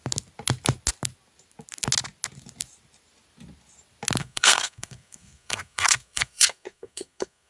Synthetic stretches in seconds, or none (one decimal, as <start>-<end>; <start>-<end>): 4.2-7.5